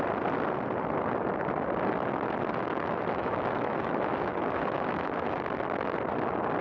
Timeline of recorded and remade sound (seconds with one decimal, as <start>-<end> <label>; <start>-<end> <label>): 0.0-2.6 recorded; 2.6-5.3 remade; 5.3-6.6 recorded